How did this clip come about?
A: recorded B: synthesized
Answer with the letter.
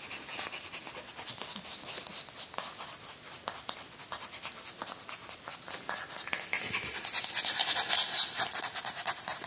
A